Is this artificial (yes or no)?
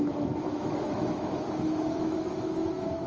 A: yes